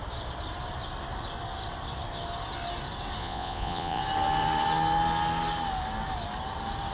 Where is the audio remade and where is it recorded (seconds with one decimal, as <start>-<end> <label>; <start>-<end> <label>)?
0.0-3.2 recorded; 3.2-4.0 remade; 4.0-6.9 recorded